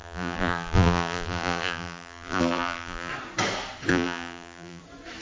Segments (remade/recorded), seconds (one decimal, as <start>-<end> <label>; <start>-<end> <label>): 0.0-3.1 remade; 3.1-3.9 recorded; 3.9-4.8 remade; 4.8-5.2 recorded